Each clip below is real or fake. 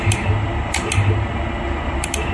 real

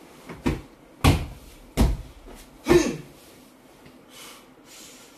real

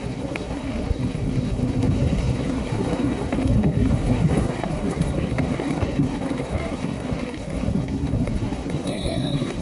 fake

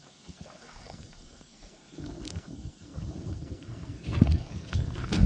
fake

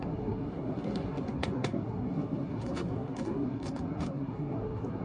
fake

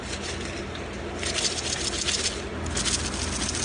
real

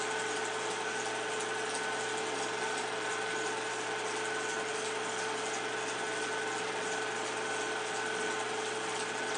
real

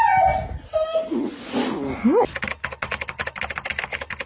real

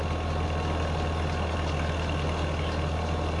real